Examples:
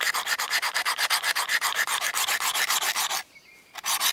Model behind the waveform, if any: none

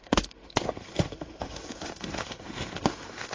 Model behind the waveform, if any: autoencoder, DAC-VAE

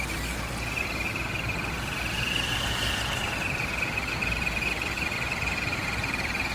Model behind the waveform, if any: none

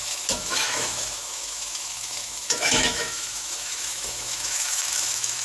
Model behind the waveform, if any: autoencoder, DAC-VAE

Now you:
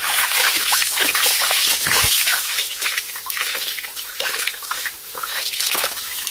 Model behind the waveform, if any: autoencoder, DAC-VAE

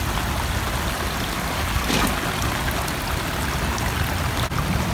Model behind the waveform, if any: none